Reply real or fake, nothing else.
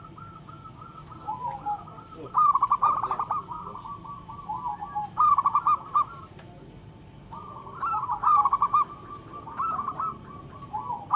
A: real